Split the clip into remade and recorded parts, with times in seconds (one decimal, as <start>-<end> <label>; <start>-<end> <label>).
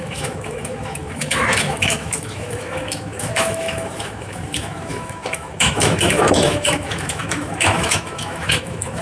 0.0-9.0 remade